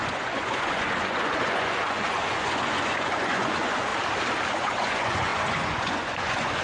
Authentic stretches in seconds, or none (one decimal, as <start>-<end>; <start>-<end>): 3.9-4.5